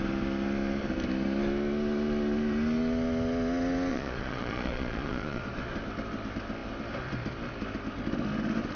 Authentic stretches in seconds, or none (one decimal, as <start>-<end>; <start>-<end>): 0.0-3.9; 5.4-8.8

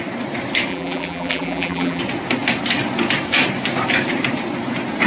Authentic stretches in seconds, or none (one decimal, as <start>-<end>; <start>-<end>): 0.0-0.7; 2.0-5.1

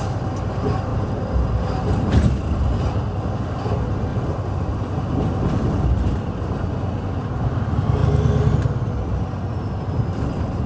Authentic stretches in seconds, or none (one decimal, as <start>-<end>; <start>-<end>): 0.0-10.7